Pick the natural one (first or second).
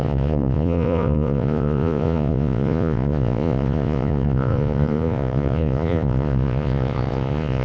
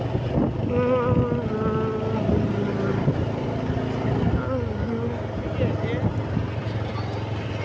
second